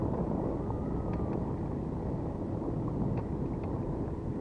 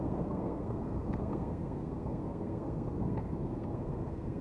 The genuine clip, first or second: first